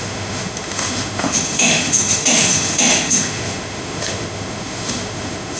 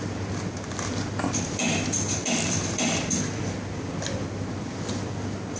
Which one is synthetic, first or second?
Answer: first